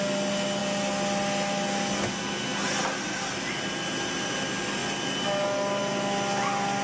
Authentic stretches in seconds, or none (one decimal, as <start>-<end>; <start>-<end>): 0.0-6.8